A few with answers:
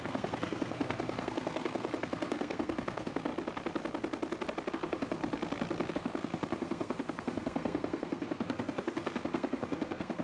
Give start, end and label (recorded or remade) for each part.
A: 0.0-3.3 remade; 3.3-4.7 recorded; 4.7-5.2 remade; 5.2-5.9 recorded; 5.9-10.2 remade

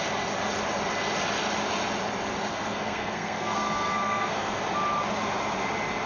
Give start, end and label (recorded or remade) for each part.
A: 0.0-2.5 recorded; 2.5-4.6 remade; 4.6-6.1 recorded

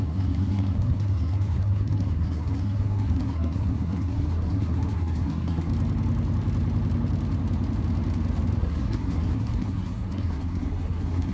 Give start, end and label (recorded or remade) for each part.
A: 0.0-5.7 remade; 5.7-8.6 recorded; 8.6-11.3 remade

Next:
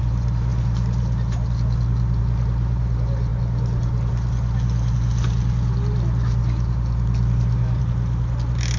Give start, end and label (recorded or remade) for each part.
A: 0.0-8.8 recorded